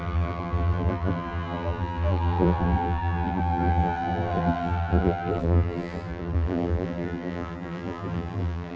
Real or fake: fake